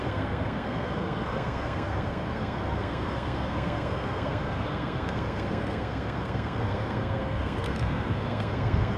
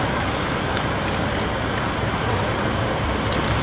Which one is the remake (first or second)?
first